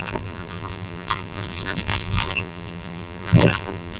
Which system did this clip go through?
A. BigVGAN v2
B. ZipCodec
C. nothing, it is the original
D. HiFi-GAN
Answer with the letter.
A